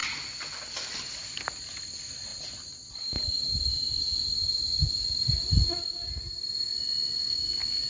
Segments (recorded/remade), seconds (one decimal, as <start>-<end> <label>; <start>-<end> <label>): 0.0-2.3 recorded; 2.3-6.7 remade; 6.7-7.9 recorded